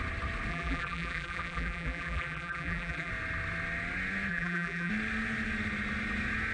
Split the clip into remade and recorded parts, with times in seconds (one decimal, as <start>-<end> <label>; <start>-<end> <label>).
0.0-0.5 recorded; 0.5-3.1 remade; 3.1-4.3 recorded; 4.3-4.9 remade; 4.9-6.5 recorded